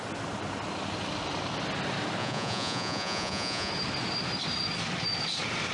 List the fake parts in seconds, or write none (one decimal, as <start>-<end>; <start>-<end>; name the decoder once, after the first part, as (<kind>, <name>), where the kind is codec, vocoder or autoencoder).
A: 2.2-3.7 (vocoder, Vocos)